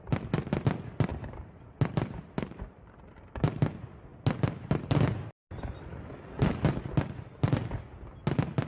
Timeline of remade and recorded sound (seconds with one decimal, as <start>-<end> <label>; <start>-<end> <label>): 0.0-1.1 recorded; 1.1-3.2 remade; 3.2-8.7 recorded